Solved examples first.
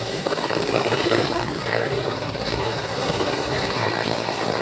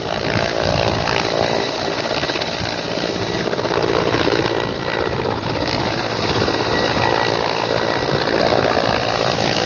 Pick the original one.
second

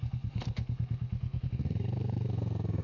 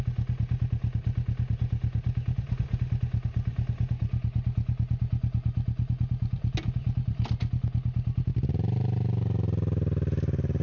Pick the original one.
second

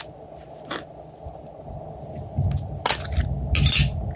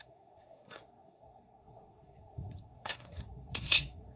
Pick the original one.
first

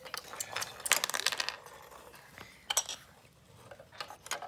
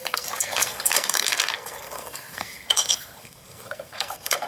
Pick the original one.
first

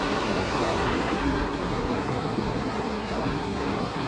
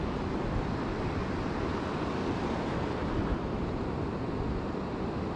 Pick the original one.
second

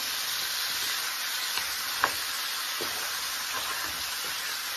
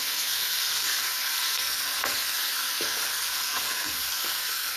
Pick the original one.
first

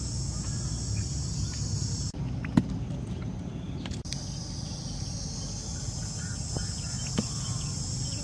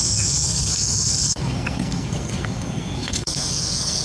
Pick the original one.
first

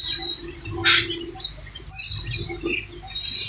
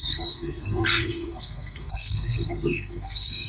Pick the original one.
first